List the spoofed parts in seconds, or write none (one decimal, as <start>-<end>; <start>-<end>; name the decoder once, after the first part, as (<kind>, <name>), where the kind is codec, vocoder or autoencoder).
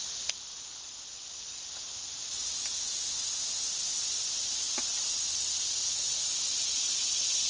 none